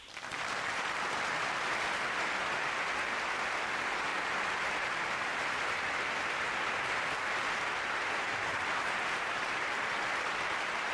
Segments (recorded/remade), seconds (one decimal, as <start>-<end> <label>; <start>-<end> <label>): 0.0-4.1 remade; 4.1-4.7 recorded; 4.7-10.9 remade